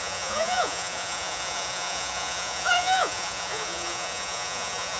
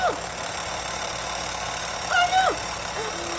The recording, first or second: second